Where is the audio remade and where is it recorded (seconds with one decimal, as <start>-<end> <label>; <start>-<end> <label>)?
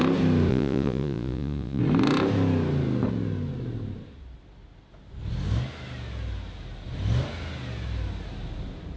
0.0-0.5 recorded; 0.5-1.8 remade; 1.8-9.0 recorded